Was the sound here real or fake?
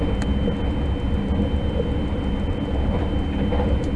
real